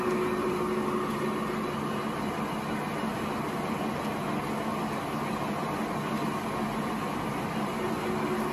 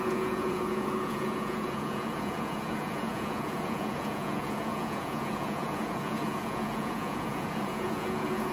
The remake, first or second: second